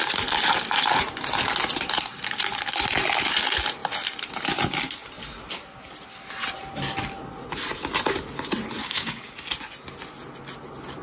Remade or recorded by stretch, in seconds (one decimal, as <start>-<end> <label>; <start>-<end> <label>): 0.0-8.8 recorded; 8.8-9.3 remade; 9.3-11.0 recorded